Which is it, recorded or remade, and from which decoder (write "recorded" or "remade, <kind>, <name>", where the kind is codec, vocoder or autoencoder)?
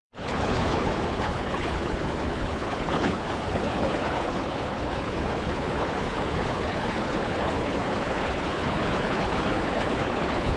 remade, codec, HILCodec